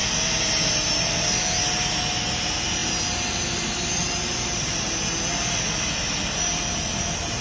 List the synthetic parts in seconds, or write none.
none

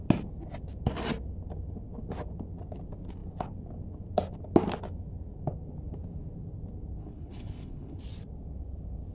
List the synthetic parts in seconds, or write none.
7.0-8.0

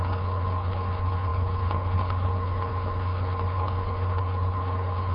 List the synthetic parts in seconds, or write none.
0.0-5.1

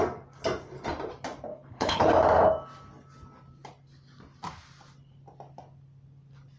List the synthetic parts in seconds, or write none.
1.5-2.1

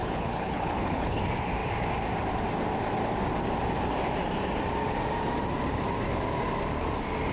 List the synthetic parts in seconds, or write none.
0.0-1.2

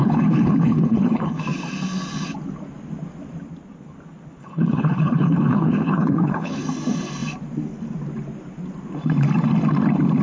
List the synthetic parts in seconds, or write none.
0.0-1.4; 4.4-6.6

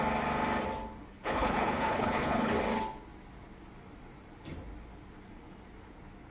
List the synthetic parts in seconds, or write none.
1.1-2.5